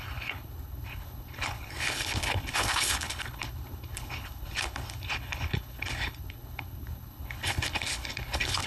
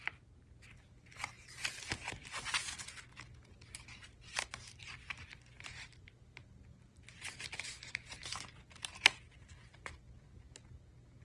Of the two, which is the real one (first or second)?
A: second